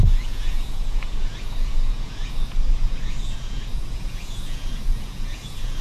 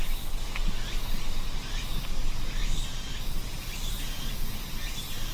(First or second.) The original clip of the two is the second